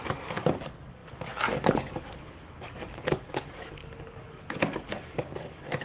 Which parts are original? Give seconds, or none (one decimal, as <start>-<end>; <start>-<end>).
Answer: none